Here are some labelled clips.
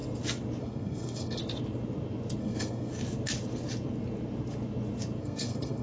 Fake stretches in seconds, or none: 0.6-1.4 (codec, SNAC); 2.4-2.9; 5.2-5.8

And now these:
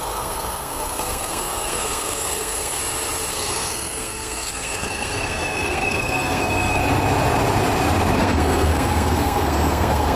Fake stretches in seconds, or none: 0.0-2.8 (codec, SNAC); 3.3-6.8; 8.2-10.2

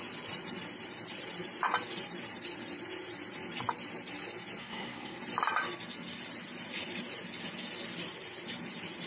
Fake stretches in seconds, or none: 4.6-5.2 (codec, SNAC)

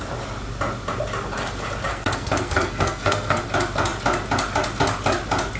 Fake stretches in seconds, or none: 1.9-3.4 (codec, SNAC)

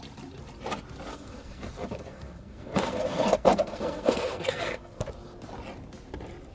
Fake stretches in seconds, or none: 1.1-5.0 (codec, SNAC)

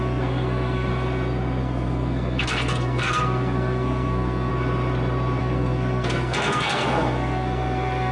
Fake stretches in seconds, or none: 0.0-0.9 (codec, SNAC); 1.6-4.5; 5.4-8.1